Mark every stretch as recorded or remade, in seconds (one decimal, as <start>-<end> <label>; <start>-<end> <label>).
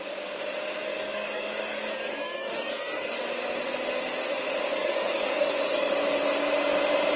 0.0-0.9 recorded; 0.9-3.2 remade; 3.2-4.8 recorded; 4.8-5.9 remade; 5.9-7.2 recorded